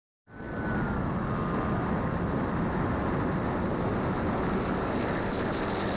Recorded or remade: recorded